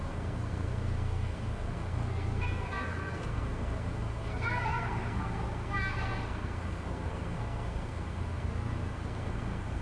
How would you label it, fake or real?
fake